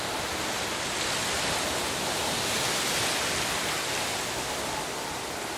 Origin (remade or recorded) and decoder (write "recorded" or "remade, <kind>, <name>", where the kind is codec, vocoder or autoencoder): recorded